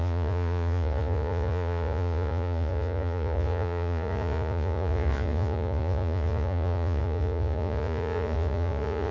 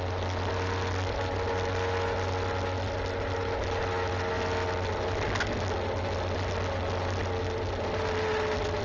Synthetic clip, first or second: first